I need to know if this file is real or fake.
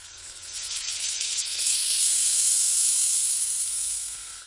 fake